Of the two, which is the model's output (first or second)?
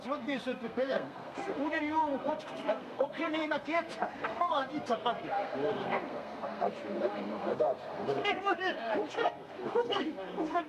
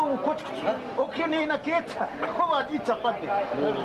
first